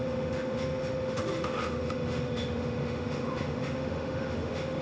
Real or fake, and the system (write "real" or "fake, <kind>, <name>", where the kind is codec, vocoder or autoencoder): fake, autoencoder, DAC-VAE